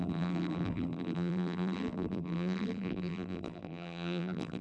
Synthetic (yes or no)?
yes